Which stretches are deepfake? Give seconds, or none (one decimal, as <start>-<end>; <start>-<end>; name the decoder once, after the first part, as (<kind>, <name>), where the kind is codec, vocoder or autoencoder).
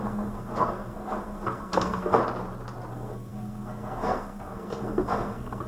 0.0-2.2 (codec, SNAC); 2.9-5.7